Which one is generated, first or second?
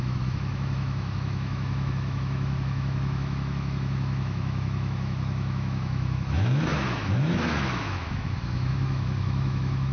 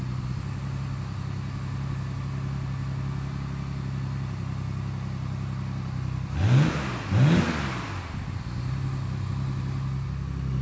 first